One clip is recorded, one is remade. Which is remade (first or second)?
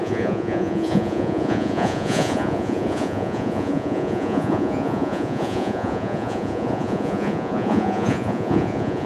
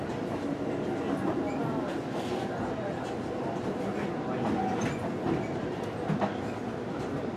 first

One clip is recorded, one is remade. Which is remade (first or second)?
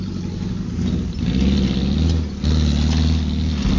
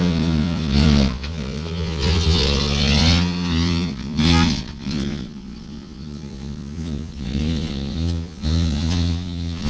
second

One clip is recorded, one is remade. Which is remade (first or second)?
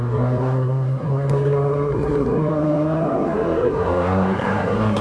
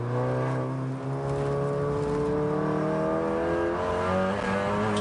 first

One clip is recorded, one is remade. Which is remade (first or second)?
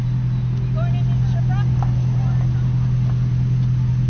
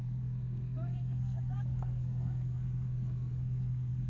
second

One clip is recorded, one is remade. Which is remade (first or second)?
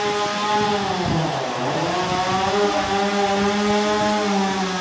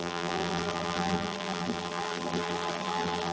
second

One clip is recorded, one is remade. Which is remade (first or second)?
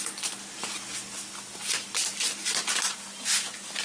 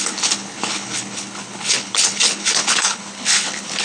second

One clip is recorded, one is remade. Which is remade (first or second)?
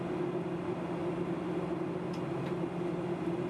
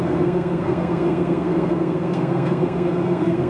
second